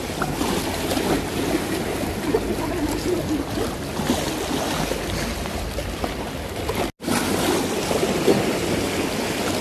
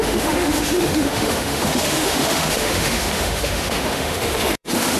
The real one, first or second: first